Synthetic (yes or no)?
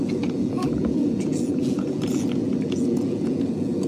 yes